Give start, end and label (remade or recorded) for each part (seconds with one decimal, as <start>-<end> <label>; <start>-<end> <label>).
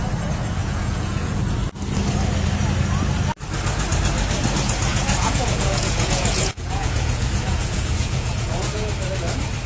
0.0-0.6 recorded; 0.6-1.4 remade; 1.4-4.9 recorded; 4.9-8.9 remade; 8.9-9.7 recorded